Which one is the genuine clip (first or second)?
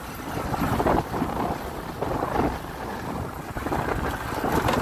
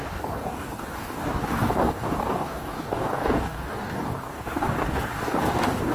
first